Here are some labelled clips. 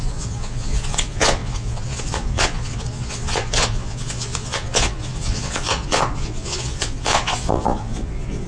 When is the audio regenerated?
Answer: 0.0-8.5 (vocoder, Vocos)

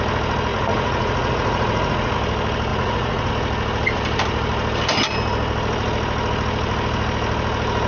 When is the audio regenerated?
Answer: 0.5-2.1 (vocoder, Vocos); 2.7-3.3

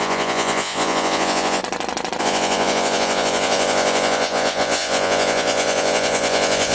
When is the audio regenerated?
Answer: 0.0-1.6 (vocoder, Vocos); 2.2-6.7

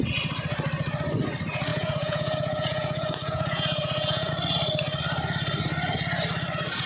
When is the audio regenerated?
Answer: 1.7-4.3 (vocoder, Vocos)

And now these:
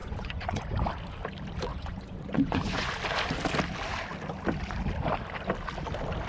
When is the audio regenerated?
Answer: 0.0-0.6 (vocoder, Vocos); 1.7-2.9

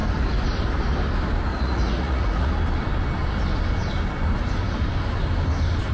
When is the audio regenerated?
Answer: 1.5-2.5 (vocoder, Vocos)

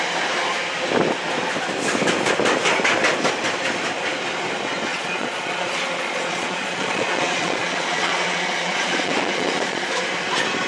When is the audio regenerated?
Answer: 4.9-9.9 (vocoder, Vocos)